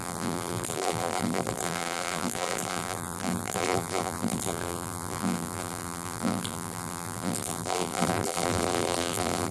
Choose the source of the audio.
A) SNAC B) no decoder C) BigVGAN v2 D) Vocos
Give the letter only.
C